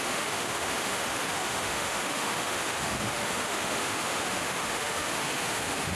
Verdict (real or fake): fake